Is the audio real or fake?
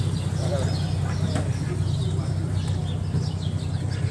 real